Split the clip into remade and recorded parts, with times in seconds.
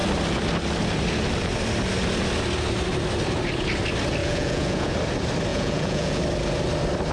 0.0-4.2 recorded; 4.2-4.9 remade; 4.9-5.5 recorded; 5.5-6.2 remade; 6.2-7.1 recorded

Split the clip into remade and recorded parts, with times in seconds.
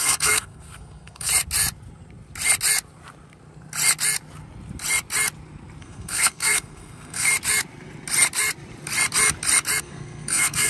0.0-1.3 remade; 1.3-5.8 recorded; 5.8-7.3 remade; 7.3-9.8 recorded; 9.8-10.7 remade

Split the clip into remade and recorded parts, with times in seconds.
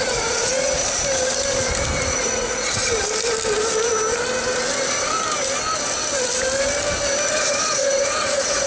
0.0-0.8 remade; 0.8-2.0 recorded; 2.0-2.8 remade; 2.8-7.3 recorded; 7.3-8.7 remade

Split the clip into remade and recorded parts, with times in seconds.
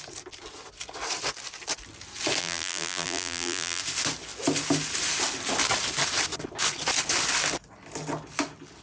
0.0-2.4 recorded; 2.4-3.8 remade; 3.8-8.8 recorded